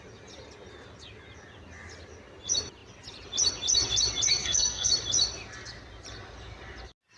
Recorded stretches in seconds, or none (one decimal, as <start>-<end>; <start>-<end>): 0.0-4.4; 4.9-7.2